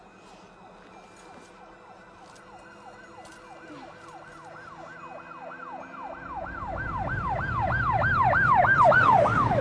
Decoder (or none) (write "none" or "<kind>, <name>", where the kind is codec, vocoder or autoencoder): none